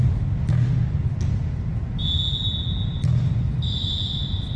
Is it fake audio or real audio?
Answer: real